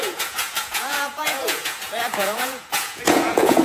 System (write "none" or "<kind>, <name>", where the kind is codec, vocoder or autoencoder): vocoder, Vocos